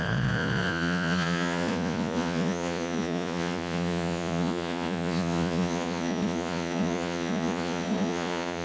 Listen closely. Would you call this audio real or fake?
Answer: fake